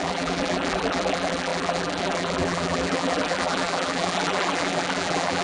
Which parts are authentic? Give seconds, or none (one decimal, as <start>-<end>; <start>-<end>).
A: none